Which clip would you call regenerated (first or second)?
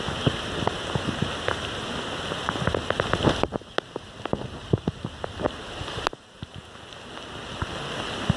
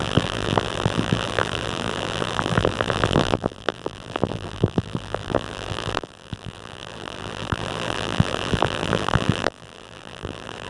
second